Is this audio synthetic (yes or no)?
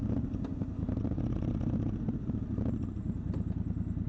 no